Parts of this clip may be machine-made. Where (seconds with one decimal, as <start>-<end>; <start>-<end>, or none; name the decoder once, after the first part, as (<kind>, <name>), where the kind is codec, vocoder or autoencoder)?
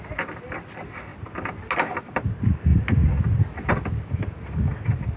none